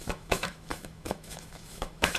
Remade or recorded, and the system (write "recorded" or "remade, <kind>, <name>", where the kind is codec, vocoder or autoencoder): remade, autoencoder, DAC-VAE